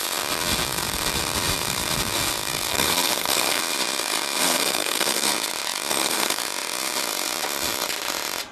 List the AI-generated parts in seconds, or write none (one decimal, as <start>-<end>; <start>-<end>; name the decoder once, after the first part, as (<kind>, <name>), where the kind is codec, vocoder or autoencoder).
2.7-3.6 (codec, SNAC); 4.4-5.3; 5.9-6.4